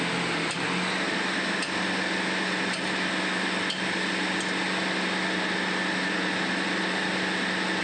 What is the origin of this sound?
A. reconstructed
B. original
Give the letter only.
B